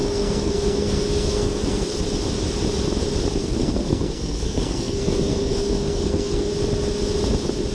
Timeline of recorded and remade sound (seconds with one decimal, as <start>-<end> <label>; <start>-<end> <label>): 0.0-2.0 remade; 2.0-3.4 recorded; 3.4-6.5 remade; 6.5-7.7 recorded